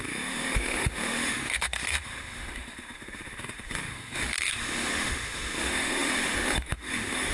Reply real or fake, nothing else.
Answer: fake